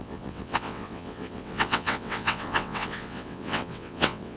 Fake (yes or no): yes